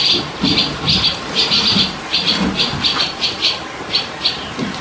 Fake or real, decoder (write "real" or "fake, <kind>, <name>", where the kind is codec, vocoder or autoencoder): real